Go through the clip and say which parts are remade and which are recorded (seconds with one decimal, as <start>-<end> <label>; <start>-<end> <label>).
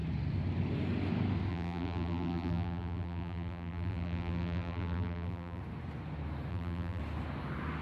0.0-1.5 recorded; 1.5-5.6 remade; 5.6-6.5 recorded; 6.5-7.0 remade; 7.0-7.8 recorded